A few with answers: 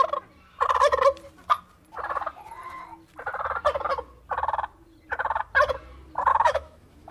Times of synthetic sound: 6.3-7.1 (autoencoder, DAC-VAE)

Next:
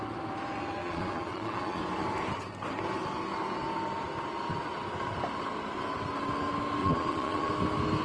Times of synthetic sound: 0.8-1.8 (vocoder, Vocos); 6.8-7.5